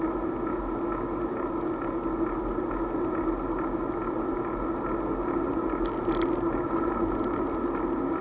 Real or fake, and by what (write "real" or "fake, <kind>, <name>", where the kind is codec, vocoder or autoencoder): real